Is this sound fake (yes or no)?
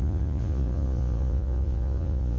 yes